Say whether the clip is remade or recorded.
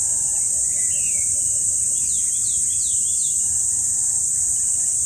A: remade